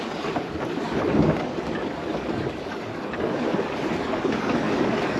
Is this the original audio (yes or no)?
no